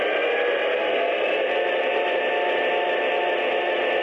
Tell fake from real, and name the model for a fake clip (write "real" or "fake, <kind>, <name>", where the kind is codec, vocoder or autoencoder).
real